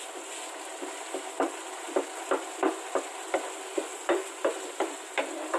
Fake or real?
real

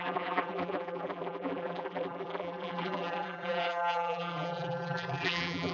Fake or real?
fake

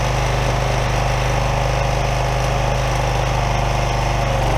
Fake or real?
real